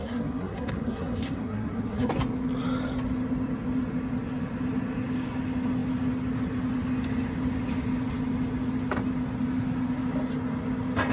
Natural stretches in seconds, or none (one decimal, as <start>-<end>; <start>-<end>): 2.1-11.1